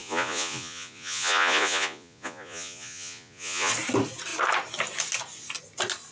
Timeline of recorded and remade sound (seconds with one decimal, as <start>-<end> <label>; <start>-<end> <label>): 0.0-3.7 remade; 3.7-6.1 recorded